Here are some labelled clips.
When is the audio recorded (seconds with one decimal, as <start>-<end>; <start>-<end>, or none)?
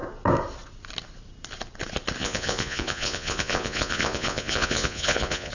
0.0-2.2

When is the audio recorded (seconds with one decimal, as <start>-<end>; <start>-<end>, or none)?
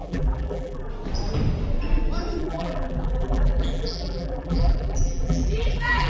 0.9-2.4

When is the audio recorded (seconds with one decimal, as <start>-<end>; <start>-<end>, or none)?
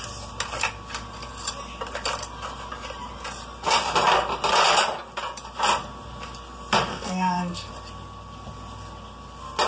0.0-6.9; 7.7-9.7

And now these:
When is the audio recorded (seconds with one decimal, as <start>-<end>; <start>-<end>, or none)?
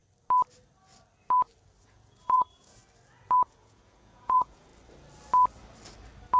0.0-1.8; 2.8-3.5; 4.7-6.4